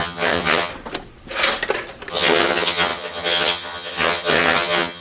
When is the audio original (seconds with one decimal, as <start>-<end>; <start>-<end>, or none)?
0.7-2.1